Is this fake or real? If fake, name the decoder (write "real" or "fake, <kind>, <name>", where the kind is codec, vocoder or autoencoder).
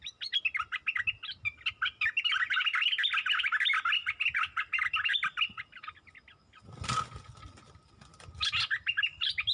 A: real